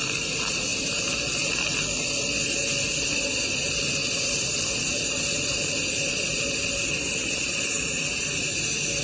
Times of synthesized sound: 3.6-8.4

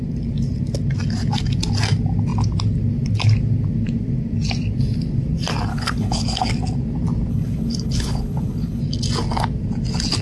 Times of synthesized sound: 5.7-6.5; 7.3-8.8

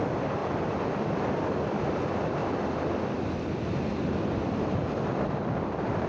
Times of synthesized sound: 0.0-2.4; 4.3-6.1